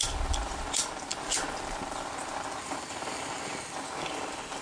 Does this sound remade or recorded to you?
recorded